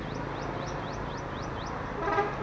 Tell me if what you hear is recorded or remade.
recorded